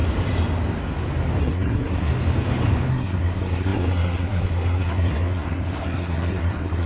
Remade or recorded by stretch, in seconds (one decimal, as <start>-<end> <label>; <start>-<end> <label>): 0.0-1.4 recorded; 1.4-2.1 remade; 2.1-2.9 recorded; 2.9-6.9 remade